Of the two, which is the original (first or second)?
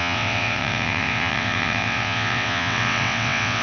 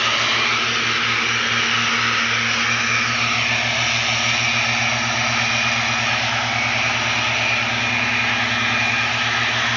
second